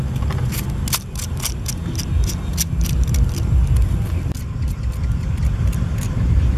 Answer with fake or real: real